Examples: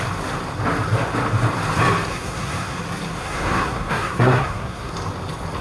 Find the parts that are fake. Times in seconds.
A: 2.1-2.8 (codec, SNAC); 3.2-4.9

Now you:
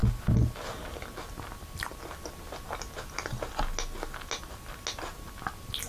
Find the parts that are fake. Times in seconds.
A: none

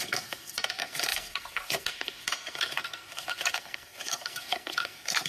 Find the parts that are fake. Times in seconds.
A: 0.0-5.3 (codec, SNAC)

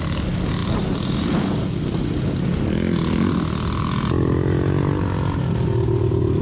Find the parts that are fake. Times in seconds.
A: none

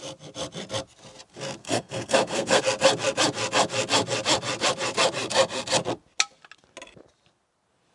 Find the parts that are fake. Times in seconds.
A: 1.6-2.6 (codec, SNAC)

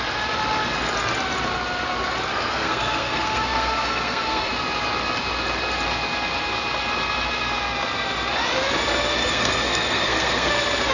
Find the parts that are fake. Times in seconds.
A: 2.3-4.5 (codec, SNAC); 9.2-10.5